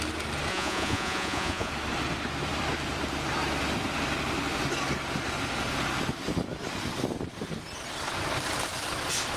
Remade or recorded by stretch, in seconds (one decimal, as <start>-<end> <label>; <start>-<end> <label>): 0.0-0.5 recorded; 0.5-1.7 remade; 1.7-9.4 recorded